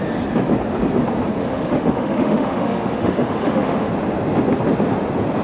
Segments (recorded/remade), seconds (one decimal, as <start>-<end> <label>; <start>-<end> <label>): 0.0-1.4 recorded; 1.4-3.9 remade; 3.9-5.4 recorded